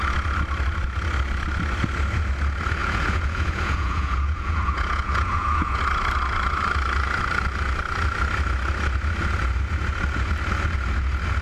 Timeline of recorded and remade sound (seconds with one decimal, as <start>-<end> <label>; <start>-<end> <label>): 0.0-2.8 recorded; 2.8-5.8 remade; 5.8-11.4 recorded